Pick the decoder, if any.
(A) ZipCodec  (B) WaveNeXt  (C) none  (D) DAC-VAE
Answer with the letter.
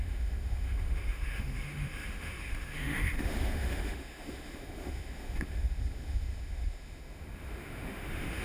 D